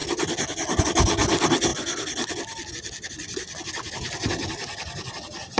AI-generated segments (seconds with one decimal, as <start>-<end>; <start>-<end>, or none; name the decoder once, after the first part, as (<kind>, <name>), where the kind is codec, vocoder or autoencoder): none